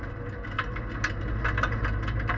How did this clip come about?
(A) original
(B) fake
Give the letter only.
A